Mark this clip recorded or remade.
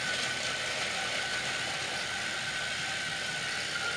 recorded